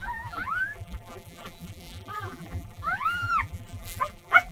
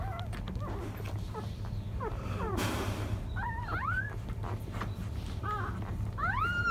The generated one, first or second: first